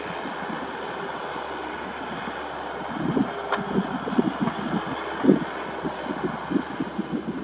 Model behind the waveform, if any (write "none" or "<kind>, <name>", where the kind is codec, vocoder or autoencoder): none